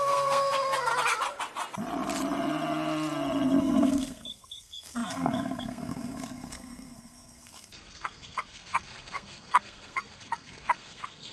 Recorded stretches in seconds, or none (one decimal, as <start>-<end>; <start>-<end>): 0.9-3.6